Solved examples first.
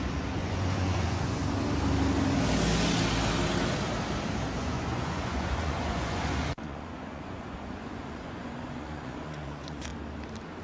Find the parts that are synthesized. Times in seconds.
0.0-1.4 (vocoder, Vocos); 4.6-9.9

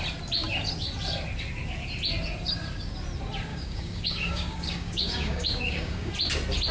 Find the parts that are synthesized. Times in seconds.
3.5-6.1 (codec, DAC)

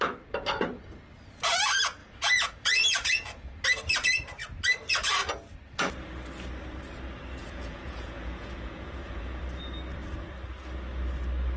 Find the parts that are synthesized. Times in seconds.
2.0-3.5 (vocoder, Vocos); 7.4-9.4

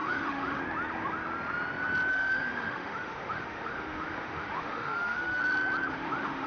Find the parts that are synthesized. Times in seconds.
0.0-0.6 (autoencoder, DAC-VAE); 2.1-5.4; 5.9-6.5